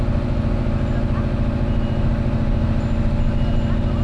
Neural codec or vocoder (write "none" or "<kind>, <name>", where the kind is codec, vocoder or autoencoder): none